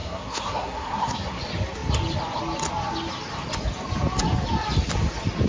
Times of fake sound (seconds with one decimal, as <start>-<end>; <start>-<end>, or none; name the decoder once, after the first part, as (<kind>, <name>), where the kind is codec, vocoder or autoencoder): 0.0-1.4 (codec, SNAC)